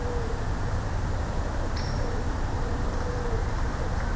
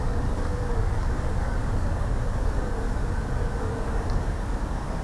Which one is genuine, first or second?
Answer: first